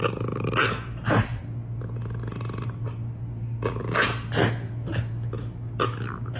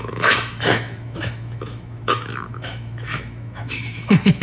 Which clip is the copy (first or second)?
second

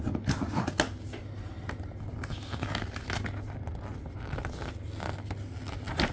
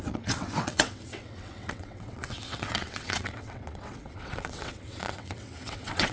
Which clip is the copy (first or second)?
second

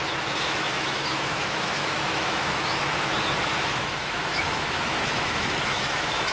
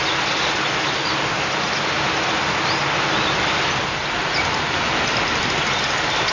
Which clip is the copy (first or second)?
first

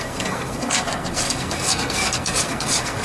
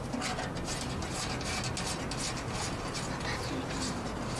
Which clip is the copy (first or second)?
first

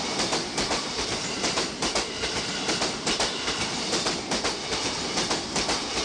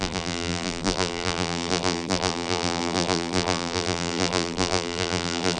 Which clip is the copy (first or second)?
second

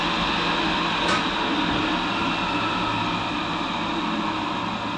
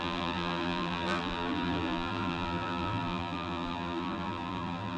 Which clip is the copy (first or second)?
second